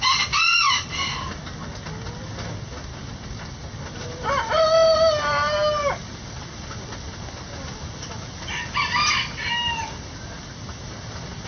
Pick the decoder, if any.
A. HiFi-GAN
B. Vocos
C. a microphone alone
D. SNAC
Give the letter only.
C